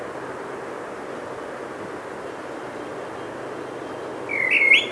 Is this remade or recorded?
recorded